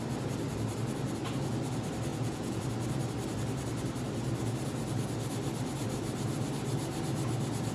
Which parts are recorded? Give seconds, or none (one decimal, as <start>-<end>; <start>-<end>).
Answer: 0.0-2.1; 2.6-7.7